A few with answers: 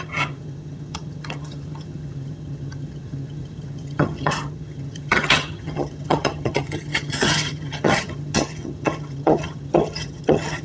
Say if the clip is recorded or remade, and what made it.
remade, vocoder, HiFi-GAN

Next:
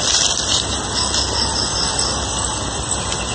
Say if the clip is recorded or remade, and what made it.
recorded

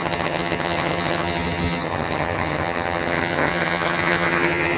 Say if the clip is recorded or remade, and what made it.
remade, vocoder, HiFi-GAN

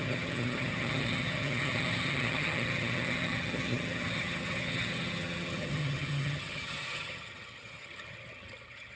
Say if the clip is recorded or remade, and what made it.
remade, vocoder, HiFi-GAN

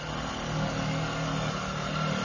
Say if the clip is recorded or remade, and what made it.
recorded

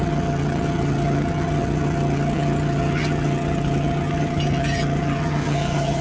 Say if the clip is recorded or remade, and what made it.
remade, vocoder, HiFi-GAN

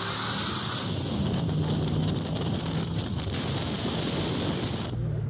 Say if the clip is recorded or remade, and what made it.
recorded